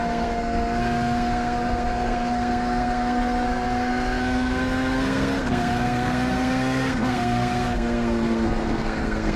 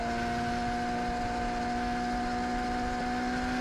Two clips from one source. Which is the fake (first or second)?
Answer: first